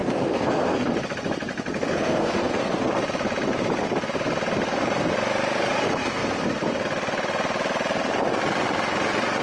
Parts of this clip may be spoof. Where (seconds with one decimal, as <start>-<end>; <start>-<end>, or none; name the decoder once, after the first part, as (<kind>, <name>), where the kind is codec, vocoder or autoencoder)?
0.0-0.9 (codec, SNAC); 1.9-2.9